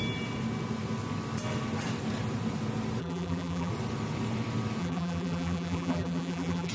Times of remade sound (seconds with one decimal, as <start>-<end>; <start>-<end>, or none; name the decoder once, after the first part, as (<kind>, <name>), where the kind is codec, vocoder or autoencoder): 3.0-3.7 (vocoder, BigVGAN v2); 4.8-6.7